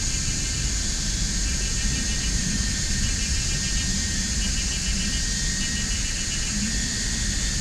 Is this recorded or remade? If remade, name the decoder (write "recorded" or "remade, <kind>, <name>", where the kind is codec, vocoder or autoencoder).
recorded